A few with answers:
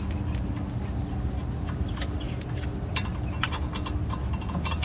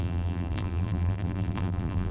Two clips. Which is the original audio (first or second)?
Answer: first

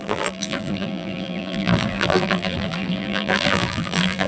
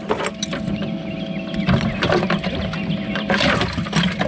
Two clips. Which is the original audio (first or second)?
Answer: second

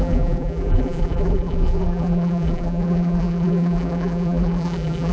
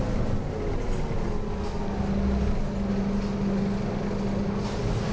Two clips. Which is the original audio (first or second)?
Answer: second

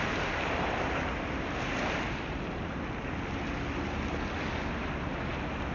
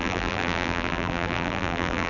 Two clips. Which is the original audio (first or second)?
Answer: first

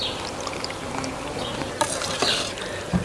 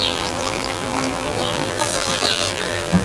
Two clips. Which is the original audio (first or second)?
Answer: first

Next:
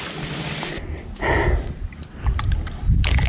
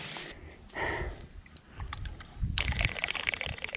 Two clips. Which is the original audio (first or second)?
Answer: first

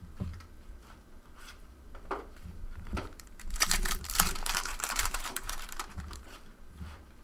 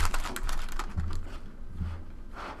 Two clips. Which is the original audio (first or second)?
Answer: second